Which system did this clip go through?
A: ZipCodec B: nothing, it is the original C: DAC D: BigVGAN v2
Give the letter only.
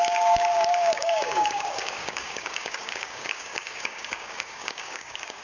C